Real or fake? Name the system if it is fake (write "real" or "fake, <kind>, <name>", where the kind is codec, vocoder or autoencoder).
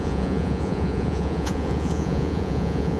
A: fake, vocoder, Vocos